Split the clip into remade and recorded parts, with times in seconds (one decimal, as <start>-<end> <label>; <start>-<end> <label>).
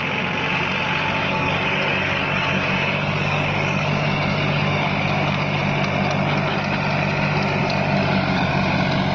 0.0-1.2 recorded; 1.2-5.6 remade; 5.6-7.6 recorded; 7.6-8.5 remade; 8.5-9.1 recorded